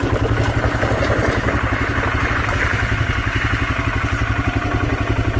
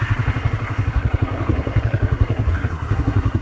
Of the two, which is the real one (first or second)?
first